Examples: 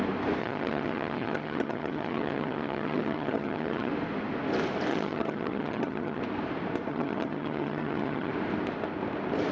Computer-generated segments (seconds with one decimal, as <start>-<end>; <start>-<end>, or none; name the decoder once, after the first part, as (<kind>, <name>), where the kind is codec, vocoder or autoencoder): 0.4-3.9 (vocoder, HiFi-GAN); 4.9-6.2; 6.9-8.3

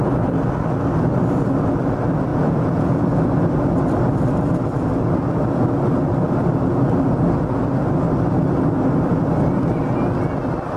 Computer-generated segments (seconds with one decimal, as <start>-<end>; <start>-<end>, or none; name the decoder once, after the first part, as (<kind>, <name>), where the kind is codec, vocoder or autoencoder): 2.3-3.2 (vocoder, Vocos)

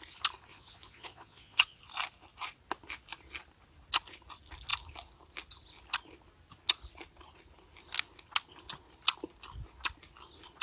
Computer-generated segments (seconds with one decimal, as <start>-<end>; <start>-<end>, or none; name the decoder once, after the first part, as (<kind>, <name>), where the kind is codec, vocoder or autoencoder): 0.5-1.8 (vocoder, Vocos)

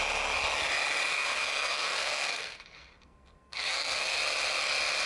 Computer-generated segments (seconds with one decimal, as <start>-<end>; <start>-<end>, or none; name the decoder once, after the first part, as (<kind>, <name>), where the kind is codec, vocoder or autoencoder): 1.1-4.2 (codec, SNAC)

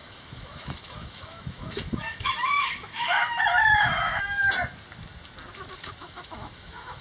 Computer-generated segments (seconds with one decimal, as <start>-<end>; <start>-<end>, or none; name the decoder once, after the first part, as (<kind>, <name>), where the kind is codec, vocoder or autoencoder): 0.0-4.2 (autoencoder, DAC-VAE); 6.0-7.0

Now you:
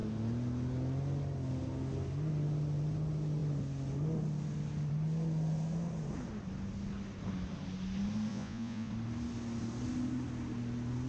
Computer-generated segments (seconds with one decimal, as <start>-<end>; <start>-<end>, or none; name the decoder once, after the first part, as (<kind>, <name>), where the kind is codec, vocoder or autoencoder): 8.3-8.9 (vocoder, Vocos)